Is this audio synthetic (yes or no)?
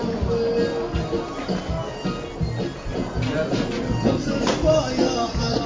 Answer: no